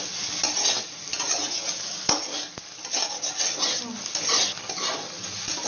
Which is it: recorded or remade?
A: recorded